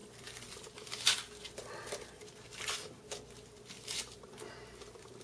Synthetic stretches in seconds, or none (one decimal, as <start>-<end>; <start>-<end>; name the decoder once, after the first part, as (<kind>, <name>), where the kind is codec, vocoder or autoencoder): none